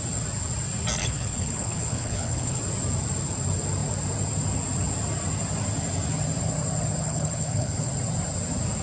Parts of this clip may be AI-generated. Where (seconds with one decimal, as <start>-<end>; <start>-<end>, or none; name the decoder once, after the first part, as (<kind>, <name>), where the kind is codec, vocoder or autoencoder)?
1.0-2.6 (codec, HILCodec); 7.0-7.9